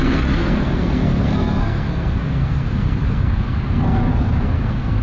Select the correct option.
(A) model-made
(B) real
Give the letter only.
A